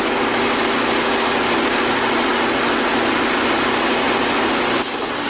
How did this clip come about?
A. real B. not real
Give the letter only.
A